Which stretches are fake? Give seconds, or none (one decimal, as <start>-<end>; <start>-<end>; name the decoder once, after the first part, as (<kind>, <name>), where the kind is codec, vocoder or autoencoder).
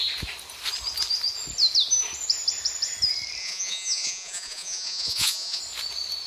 3.4-5.6 (vocoder, Vocos)